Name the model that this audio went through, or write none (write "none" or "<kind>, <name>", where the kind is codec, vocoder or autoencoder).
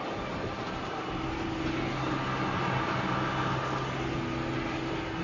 none